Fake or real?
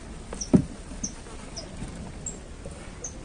real